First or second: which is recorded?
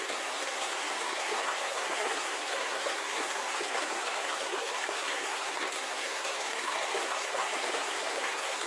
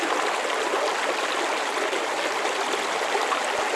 second